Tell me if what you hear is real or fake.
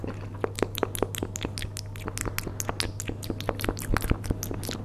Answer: real